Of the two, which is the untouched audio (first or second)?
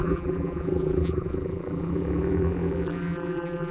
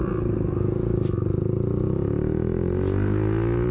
second